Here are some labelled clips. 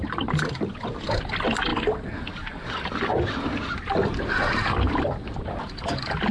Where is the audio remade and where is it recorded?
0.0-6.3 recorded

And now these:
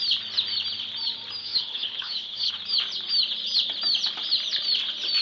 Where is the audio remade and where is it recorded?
0.0-1.4 recorded; 1.4-2.5 remade; 2.5-5.2 recorded

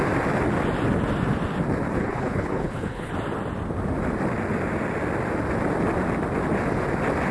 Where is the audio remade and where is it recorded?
0.0-1.9 recorded; 1.9-3.1 remade; 3.1-7.3 recorded

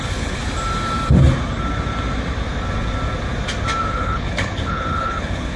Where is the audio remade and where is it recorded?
0.0-0.4 remade; 0.4-3.8 recorded; 3.8-5.6 remade

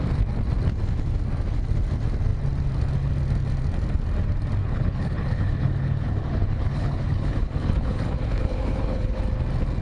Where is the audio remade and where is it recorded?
0.0-4.6 recorded; 4.6-9.2 remade; 9.2-9.8 recorded

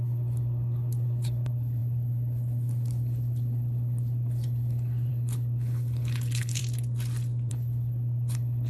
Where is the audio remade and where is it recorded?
0.0-6.6 remade; 6.6-7.5 recorded; 7.5-8.7 remade